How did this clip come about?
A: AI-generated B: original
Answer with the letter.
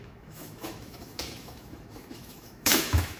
A